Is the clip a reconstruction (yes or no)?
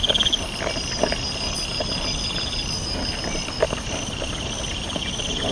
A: no